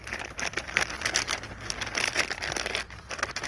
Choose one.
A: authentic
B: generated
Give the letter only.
A